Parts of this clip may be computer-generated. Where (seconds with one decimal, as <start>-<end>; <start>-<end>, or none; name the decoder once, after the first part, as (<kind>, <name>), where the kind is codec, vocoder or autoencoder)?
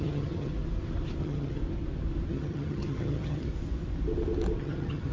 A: 0.0-0.5 (vocoder, HiFi-GAN); 1.2-1.6; 2.3-3.5; 4.6-5.1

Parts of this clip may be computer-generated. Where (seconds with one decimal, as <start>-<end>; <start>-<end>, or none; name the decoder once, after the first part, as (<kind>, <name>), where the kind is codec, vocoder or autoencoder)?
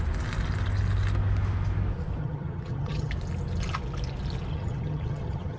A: 2.2-3.1 (vocoder, HiFi-GAN); 4.5-5.6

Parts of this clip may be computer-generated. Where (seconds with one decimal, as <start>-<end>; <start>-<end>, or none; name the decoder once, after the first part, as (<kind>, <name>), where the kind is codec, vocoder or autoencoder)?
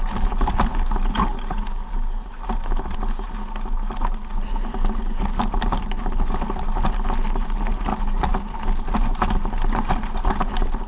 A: none